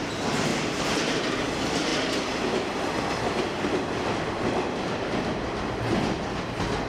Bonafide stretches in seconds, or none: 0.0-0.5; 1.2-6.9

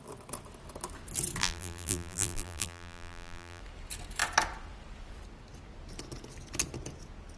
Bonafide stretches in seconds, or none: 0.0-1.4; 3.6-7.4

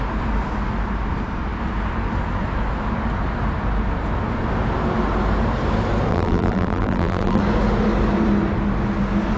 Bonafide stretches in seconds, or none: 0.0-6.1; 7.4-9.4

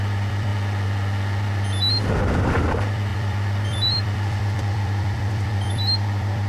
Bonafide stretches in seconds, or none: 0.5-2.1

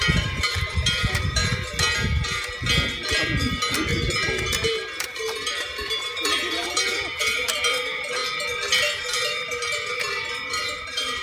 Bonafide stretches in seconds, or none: 1.4-4.5; 8.2-8.7

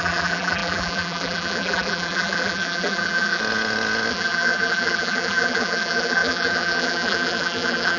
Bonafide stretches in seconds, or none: 3.4-4.1

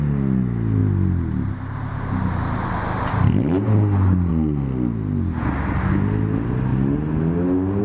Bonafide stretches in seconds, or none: 0.0-7.8

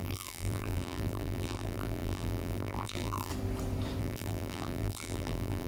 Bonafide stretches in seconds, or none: 3.3-4.0